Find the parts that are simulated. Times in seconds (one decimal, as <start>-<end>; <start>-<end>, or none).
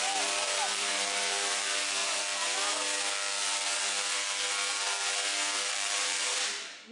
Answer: 0.0-2.0; 5.7-6.9